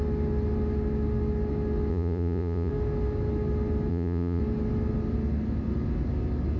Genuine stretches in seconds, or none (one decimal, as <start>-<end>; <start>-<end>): 0.0-1.9; 2.7-3.9; 4.4-6.6